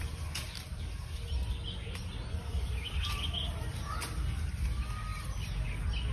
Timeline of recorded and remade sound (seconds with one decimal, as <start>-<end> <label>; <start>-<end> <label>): 0.0-6.1 recorded